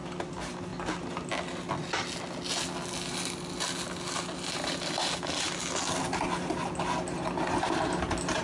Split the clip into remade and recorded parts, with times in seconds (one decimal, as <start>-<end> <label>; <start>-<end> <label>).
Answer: 0.0-8.4 recorded